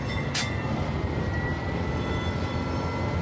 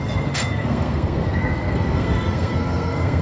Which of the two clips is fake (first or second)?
second